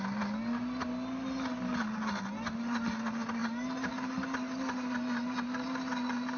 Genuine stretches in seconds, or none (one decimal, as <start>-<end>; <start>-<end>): 0.0-6.4